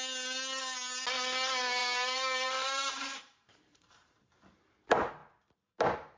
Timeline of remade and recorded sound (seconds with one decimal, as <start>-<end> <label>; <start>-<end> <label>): 0.0-1.8 recorded; 1.8-4.2 remade; 4.2-6.2 recorded